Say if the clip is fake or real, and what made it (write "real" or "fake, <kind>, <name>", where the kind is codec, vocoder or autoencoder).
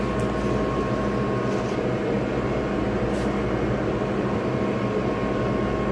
real